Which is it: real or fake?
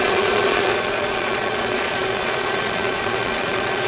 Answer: fake